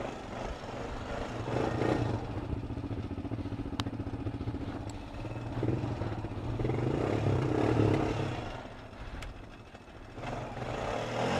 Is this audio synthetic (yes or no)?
no